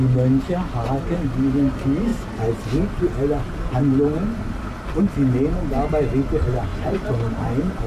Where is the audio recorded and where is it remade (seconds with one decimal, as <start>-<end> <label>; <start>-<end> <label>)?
0.0-6.7 recorded; 6.7-7.3 remade; 7.3-7.9 recorded